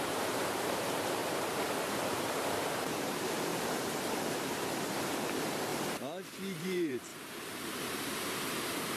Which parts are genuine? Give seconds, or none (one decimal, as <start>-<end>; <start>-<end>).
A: 1.2-1.9; 3.5-4.1; 5.7-6.6